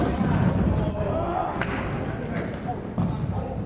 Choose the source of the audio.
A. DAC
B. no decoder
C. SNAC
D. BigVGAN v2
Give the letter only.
B